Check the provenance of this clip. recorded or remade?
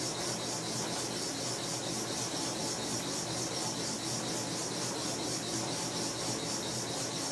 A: recorded